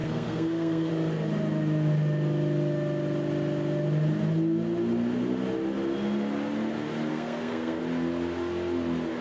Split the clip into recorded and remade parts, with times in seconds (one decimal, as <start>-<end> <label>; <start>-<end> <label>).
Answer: 0.0-0.9 remade; 0.9-7.1 recorded; 7.1-7.8 remade; 7.8-9.2 recorded